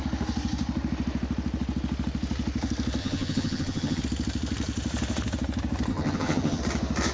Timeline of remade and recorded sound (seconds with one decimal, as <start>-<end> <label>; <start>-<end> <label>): 0.0-3.0 recorded; 3.0-4.0 remade; 4.0-5.9 recorded; 5.9-6.6 remade; 6.6-7.1 recorded